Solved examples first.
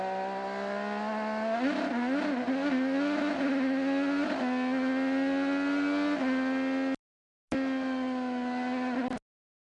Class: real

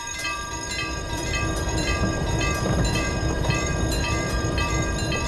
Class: fake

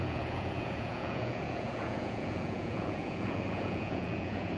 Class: fake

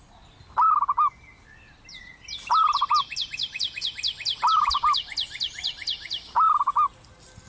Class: real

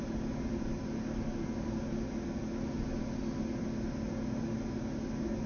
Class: real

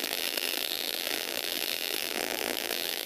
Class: fake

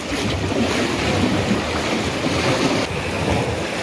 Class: real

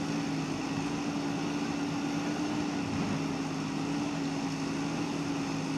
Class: real